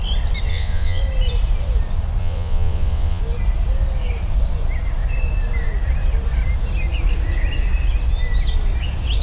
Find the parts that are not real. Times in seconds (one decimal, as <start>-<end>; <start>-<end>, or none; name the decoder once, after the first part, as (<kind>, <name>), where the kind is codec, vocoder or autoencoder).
0.5-1.0 (vocoder, WaveNeXt); 2.2-3.2

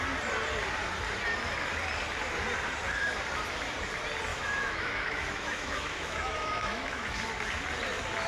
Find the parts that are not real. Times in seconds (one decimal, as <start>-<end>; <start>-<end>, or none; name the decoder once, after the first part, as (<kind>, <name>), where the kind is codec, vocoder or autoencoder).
4.3-7.2 (autoencoder, DAC-VAE)